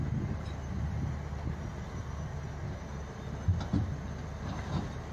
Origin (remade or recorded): recorded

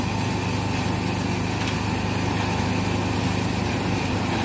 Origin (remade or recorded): recorded